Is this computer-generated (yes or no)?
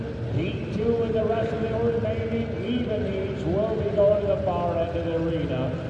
no